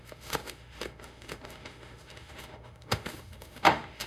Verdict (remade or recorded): remade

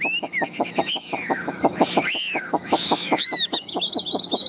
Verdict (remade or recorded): remade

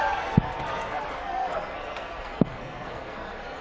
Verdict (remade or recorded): remade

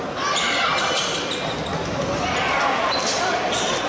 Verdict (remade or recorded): recorded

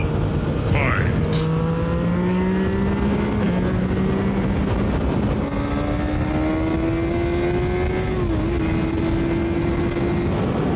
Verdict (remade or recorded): recorded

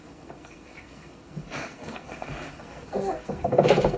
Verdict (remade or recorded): remade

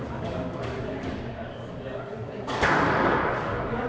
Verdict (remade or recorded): remade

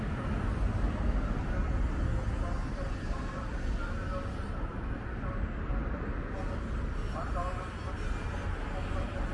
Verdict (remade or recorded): recorded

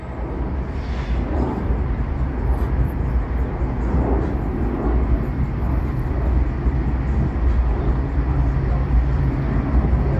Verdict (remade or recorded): recorded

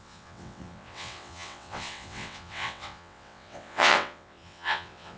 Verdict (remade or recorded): remade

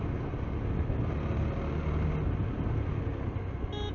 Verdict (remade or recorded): recorded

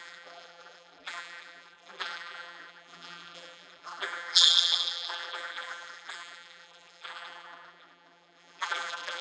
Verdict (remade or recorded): remade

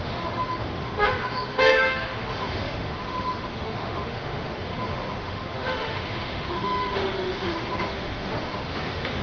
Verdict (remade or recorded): remade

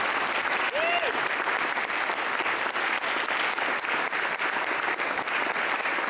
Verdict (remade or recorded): recorded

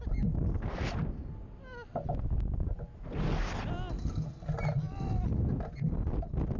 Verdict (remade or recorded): recorded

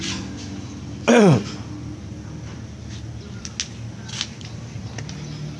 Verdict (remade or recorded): recorded